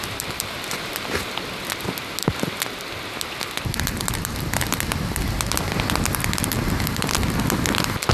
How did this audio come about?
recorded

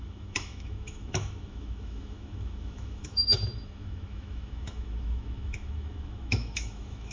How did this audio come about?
remade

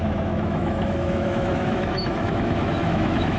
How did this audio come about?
remade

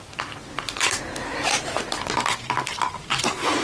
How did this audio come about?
recorded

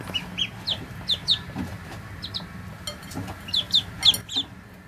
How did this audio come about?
recorded